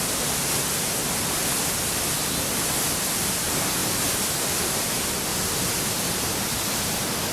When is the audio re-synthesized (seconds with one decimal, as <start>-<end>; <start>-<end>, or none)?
3.8-4.6; 5.3-6.8